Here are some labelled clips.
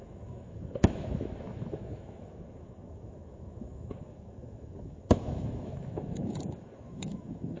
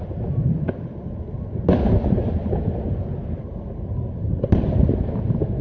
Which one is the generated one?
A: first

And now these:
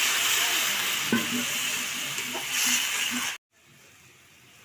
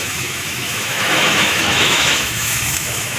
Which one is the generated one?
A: second